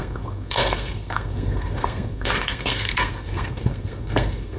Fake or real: fake